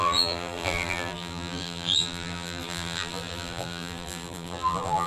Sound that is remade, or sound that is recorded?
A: remade